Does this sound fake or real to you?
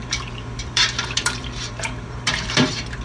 fake